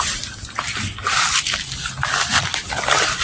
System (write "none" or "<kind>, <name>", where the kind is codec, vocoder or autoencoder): none